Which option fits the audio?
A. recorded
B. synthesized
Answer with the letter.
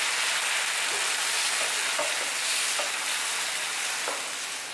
A